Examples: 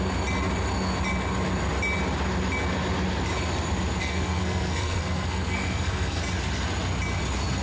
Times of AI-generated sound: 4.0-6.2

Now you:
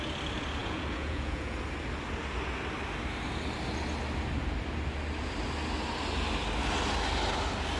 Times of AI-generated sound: 0.6-1.6